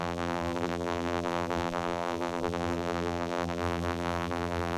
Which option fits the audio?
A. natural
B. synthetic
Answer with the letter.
B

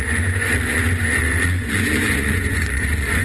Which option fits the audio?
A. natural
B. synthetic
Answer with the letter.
B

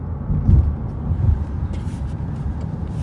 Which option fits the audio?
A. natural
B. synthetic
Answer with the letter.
A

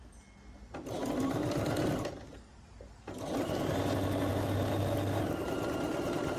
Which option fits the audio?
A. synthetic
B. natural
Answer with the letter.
B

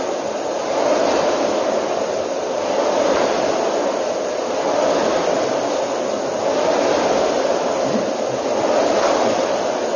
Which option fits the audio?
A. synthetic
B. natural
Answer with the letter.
B